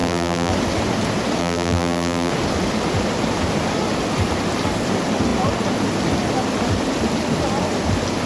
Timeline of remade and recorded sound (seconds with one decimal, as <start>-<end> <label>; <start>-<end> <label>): 0.0-0.5 remade; 0.5-1.4 recorded; 1.4-2.3 remade; 2.3-8.3 recorded